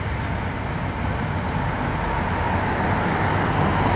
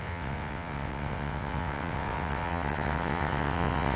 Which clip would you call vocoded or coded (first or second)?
second